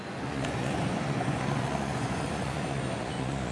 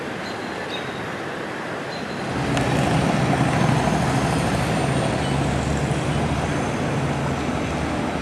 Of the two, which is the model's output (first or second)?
first